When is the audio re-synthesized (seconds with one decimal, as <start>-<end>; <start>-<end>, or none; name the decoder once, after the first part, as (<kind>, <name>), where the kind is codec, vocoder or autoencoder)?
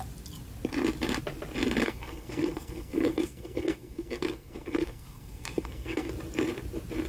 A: 1.8-6.1 (codec, SNAC)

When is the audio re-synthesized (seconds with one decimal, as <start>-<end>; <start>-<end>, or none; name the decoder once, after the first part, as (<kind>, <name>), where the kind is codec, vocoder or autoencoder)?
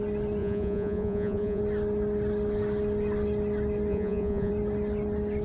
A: 0.4-1.6 (vocoder, Vocos); 3.9-4.5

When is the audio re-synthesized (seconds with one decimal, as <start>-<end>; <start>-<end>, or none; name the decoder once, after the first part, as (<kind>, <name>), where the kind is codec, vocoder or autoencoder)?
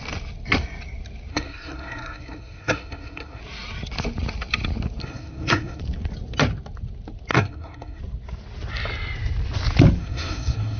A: 1.3-3.4 (codec, SNAC); 5.0-5.8; 7.3-8.0; 10.0-10.8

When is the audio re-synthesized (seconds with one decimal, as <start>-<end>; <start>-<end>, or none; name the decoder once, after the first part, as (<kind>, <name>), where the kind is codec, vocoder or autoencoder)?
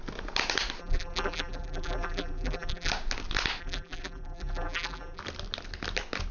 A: 0.8-2.9 (vocoder, BigVGAN v2); 3.6-5.2